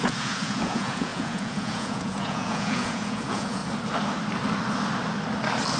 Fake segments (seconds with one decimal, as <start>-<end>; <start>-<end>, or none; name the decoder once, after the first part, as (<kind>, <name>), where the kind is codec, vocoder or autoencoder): 0.0-3.6 (vocoder, Vocos)